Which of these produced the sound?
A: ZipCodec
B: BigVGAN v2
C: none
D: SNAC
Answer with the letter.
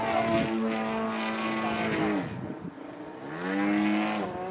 C